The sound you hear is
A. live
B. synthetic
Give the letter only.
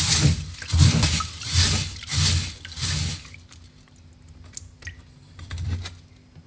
A